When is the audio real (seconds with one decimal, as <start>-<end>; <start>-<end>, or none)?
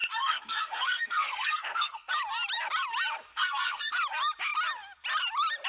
2.1-3.3; 3.9-5.7